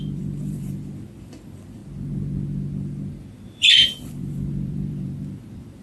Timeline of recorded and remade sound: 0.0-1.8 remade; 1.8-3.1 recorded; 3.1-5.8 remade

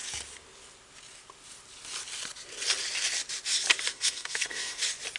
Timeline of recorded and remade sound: 0.0-3.9 recorded; 3.9-4.8 remade; 4.8-5.2 recorded

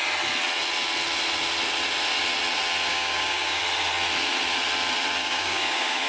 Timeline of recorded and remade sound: 0.0-2.9 recorded; 2.9-3.6 remade; 3.6-5.2 recorded; 5.2-6.1 remade

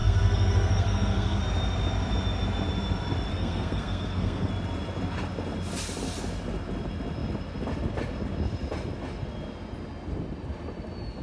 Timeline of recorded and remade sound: 0.0-1.4 remade; 1.4-3.3 recorded; 3.3-4.5 remade; 4.5-11.2 recorded

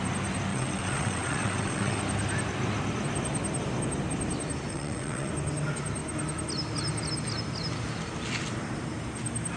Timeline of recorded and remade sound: 0.0-0.5 recorded; 0.5-2.0 remade; 2.0-4.7 recorded; 4.7-5.3 remade; 5.3-9.6 recorded

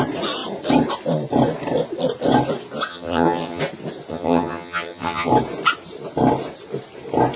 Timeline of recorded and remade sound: 0.0-2.9 recorded; 2.9-3.6 remade; 3.6-4.1 recorded; 4.1-5.3 remade; 5.3-7.4 recorded

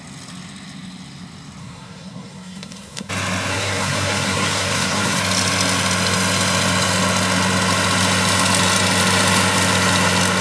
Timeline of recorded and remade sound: 0.0-1.6 recorded; 1.6-3.1 remade; 3.1-3.5 recorded; 3.5-5.2 remade; 5.2-10.4 recorded

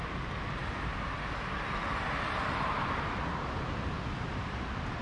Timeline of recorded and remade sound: 0.0-5.0 recorded